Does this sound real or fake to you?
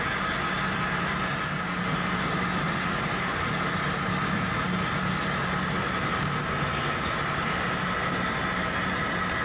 real